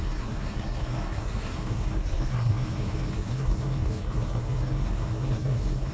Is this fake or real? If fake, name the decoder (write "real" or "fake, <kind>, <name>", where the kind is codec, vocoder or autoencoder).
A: fake, codec, SNAC